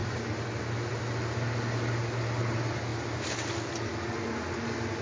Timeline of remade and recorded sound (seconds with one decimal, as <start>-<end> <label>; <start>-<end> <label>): 0.0-5.0 recorded